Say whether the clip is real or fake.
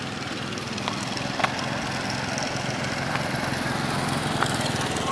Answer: real